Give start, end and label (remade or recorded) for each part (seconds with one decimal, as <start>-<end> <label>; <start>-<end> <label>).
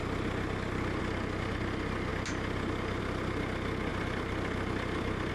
0.0-3.9 recorded; 3.9-5.3 remade